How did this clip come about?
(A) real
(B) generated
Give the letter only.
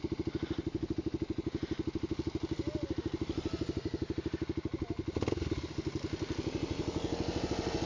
A